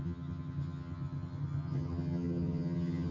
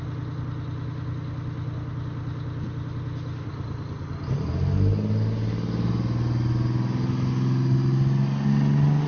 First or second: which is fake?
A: first